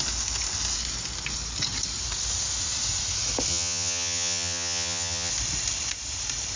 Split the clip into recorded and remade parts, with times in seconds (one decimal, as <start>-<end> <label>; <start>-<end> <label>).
0.0-3.5 recorded; 3.5-5.3 remade; 5.3-6.6 recorded